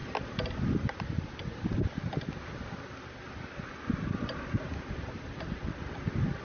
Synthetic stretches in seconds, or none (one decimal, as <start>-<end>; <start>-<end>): none